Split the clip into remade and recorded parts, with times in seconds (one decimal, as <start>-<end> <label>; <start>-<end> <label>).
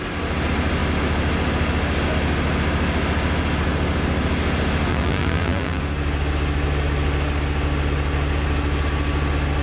0.0-4.9 recorded; 4.9-5.8 remade; 5.8-9.6 recorded